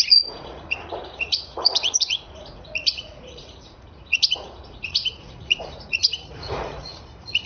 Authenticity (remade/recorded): remade